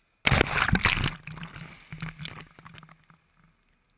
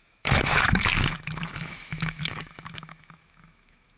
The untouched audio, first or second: first